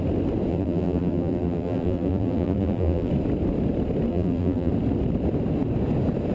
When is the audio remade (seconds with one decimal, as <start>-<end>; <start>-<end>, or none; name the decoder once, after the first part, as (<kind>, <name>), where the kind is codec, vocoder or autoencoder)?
0.5-3.1 (vocoder, BigVGAN v2); 4.1-4.7